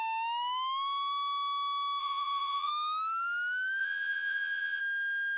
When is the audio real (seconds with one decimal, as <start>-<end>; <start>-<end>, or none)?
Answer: 0.0-2.0; 2.7-3.8; 4.8-5.4